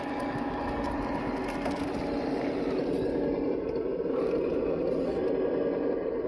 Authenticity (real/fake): real